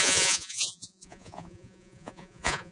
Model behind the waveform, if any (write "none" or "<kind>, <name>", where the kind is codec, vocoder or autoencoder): vocoder, Vocos